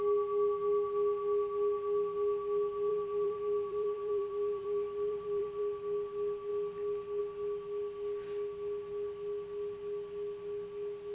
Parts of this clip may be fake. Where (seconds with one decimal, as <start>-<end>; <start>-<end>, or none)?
2.9-5.6